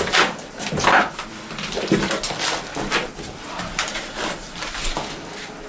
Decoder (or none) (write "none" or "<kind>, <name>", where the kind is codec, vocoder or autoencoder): vocoder, BigVGAN v2